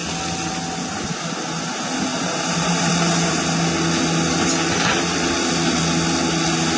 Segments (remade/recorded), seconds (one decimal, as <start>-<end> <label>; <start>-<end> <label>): 0.0-2.1 recorded; 2.1-3.4 remade; 3.4-6.8 recorded